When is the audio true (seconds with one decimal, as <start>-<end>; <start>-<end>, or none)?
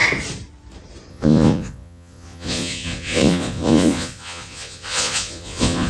0.0-1.1